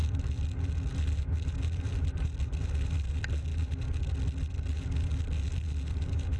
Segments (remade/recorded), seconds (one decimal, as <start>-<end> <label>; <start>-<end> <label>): 0.0-6.4 recorded